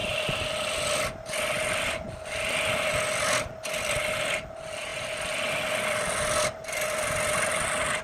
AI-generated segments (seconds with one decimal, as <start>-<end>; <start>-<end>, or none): none